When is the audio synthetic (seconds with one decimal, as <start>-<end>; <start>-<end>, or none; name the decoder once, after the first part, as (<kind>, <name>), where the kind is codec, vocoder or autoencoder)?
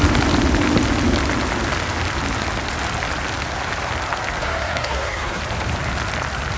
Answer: 4.4-5.4 (codec, SNAC)